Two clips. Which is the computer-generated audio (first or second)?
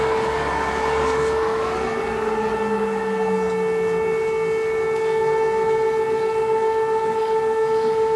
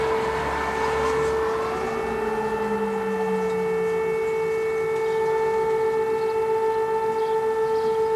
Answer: first